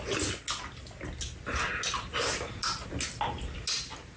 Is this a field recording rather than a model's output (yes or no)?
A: yes